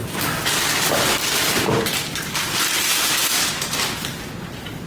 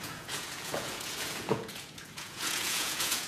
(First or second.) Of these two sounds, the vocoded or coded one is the second